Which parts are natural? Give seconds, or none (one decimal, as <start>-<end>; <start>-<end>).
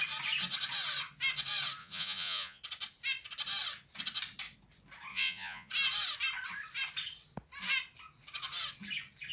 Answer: 0.0-1.8; 2.6-5.1; 5.7-9.3